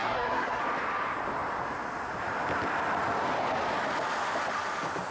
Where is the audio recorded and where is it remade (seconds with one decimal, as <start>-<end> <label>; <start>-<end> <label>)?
0.0-0.6 remade; 0.6-5.1 recorded